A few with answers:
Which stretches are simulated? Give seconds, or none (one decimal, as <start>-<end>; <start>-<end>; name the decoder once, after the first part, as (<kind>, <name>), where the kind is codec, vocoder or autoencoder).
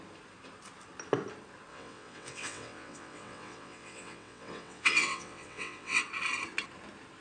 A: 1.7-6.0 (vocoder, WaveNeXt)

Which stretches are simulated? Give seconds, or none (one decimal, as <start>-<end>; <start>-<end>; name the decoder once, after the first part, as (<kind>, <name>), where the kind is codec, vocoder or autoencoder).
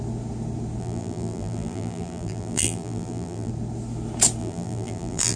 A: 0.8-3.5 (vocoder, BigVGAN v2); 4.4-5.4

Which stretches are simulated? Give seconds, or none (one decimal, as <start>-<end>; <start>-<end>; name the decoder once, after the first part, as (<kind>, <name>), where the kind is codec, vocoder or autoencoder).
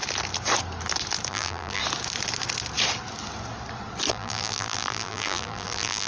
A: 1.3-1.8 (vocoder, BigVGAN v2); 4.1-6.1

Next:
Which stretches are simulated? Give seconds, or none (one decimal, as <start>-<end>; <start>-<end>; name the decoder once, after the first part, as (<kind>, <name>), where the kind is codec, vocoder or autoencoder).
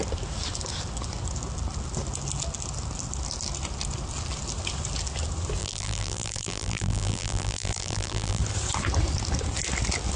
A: 5.6-8.4 (vocoder, BigVGAN v2)